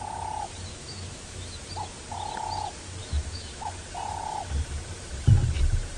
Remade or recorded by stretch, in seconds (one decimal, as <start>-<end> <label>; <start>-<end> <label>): 0.0-0.7 recorded; 0.7-1.6 remade; 1.6-3.0 recorded; 3.0-3.7 remade; 3.7-6.0 recorded